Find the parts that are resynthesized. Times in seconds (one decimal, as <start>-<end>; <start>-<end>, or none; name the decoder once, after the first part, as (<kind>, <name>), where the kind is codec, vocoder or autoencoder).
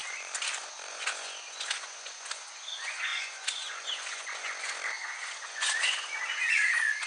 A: 0.6-7.1 (vocoder, Vocos)